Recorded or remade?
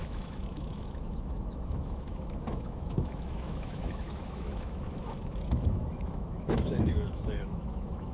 remade